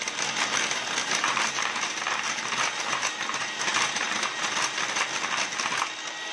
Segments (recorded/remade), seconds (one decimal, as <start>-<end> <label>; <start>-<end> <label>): 0.0-1.0 recorded; 1.0-4.8 remade; 4.8-6.3 recorded